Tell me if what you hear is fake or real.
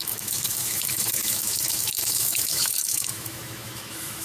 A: fake